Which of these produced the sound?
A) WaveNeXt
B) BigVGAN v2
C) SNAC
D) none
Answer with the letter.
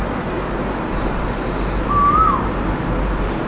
D